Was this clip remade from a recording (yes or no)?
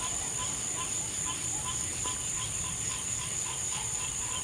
yes